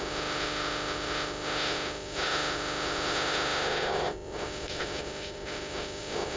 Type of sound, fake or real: fake